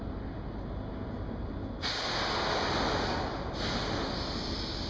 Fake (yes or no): no